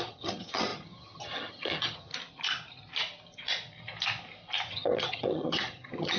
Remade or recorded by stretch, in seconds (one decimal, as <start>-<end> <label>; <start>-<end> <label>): 0.0-2.1 remade; 2.1-4.7 recorded; 4.7-6.2 remade